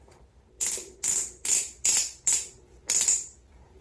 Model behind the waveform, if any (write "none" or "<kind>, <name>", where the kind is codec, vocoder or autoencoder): none